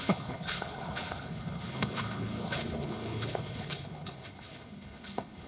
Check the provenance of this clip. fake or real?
fake